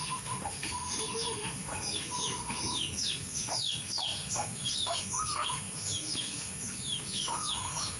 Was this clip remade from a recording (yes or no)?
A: yes